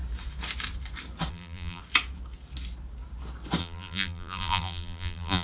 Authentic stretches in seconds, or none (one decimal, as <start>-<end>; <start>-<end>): 0.0-1.3; 1.8-3.6